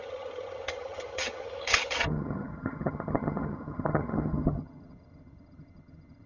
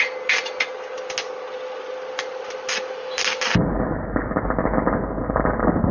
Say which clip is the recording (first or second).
second